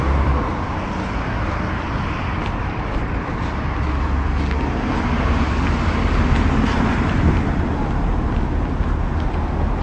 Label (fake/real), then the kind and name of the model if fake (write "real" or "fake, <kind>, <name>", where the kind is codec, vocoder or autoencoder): real